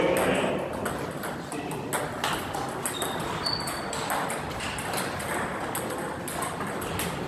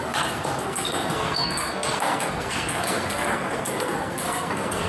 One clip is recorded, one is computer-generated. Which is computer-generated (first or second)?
second